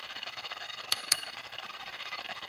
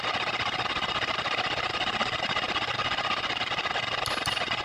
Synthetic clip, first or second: first